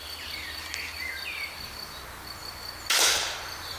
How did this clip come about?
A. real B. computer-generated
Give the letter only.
A